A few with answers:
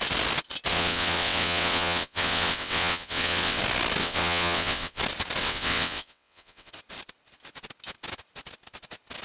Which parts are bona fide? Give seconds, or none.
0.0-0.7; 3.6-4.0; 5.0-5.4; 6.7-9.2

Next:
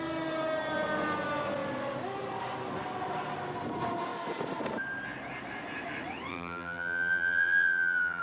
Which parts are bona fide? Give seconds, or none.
0.0-6.3

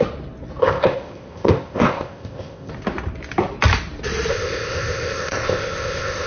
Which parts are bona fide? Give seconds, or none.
0.0-0.6; 2.7-4.3

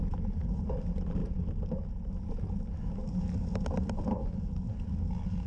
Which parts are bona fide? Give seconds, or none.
0.0-5.5

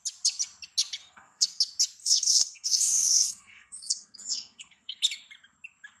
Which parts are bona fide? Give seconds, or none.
0.0-1.0; 1.6-2.0; 5.0-6.0

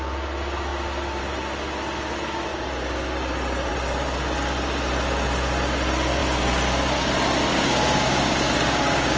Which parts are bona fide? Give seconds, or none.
0.0-7.5

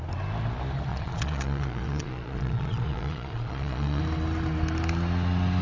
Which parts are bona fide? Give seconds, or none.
0.0-0.9; 4.0-5.6

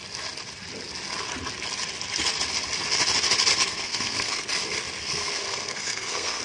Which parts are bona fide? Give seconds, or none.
0.0-3.5; 4.5-5.0